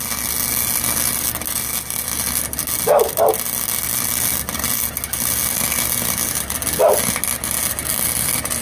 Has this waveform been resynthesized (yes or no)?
no